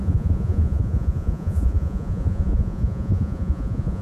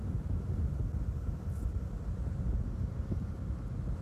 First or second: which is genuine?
second